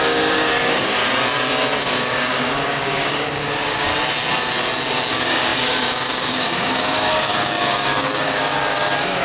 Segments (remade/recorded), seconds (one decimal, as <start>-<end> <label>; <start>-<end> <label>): 0.0-1.0 remade; 1.0-1.8 recorded; 1.8-3.9 remade; 3.9-5.1 recorded; 5.1-9.2 remade